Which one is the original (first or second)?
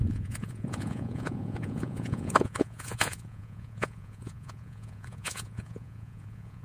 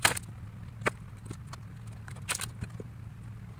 second